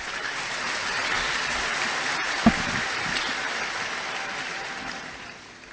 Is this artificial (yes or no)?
no